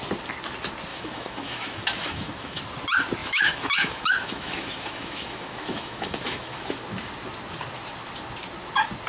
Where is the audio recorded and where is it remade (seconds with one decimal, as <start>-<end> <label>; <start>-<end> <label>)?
0.0-0.9 recorded; 0.9-2.6 remade; 2.6-3.2 recorded; 3.2-6.8 remade; 6.8-9.1 recorded